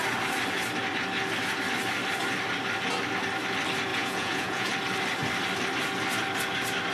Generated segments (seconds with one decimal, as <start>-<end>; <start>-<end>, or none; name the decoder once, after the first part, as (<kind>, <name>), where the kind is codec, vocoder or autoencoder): 3.9-4.7 (vocoder, Vocos)